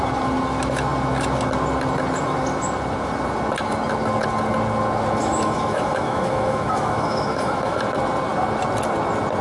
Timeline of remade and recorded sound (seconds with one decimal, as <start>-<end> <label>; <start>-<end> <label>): 0.0-5.2 recorded; 5.2-7.8 remade; 7.8-9.4 recorded